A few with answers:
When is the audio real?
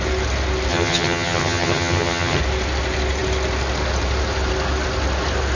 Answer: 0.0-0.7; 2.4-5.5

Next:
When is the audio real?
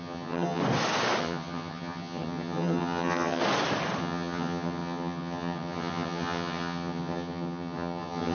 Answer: 0.6-1.2; 3.4-4.0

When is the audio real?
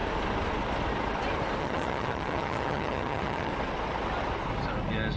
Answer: 0.0-1.6; 3.5-5.2